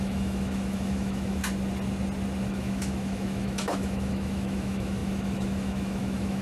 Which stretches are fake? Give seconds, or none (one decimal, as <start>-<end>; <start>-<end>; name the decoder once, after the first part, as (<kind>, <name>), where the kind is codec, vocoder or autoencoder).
0.0-1.4 (autoencoder, DAC-VAE); 2.5-6.4